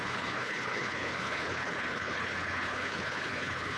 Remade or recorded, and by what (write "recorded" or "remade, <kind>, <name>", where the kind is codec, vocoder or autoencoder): remade, codec, HILCodec